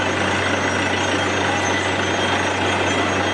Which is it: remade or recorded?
recorded